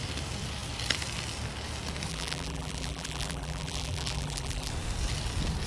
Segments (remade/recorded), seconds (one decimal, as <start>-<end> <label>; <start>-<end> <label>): 0.0-2.1 recorded; 2.1-4.7 remade; 4.7-5.7 recorded